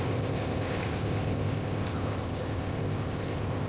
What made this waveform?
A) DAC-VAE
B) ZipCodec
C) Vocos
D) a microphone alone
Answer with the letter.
B